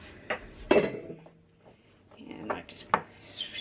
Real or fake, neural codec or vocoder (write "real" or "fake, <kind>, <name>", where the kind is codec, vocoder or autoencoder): real